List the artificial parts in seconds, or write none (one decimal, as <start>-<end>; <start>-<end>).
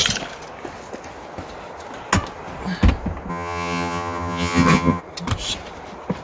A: 3.3-5.0